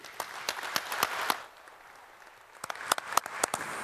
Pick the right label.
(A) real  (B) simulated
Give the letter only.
A